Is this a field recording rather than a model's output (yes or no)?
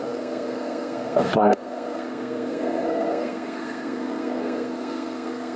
no